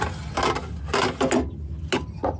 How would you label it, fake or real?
real